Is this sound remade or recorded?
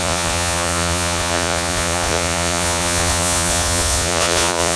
remade